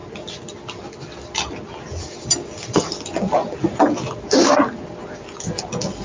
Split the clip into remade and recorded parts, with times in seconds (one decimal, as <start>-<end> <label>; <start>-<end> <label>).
0.0-6.0 recorded